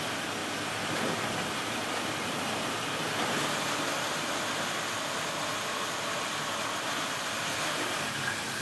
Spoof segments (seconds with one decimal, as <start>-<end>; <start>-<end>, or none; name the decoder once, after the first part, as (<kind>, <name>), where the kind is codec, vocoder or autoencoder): none